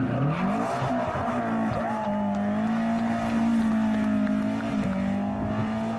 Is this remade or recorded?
recorded